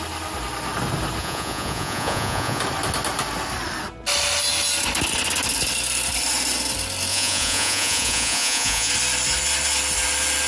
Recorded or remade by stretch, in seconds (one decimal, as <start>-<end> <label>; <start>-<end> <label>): 0.0-1.2 recorded; 1.2-2.6 remade; 2.6-7.1 recorded; 7.1-8.9 remade; 8.9-10.5 recorded